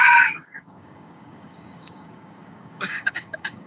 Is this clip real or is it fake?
fake